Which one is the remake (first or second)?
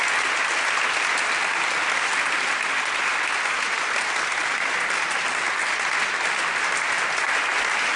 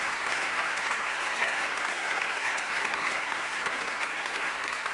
second